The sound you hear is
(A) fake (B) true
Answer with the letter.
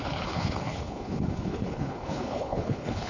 A